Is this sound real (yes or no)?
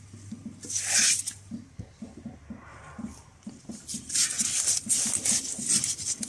no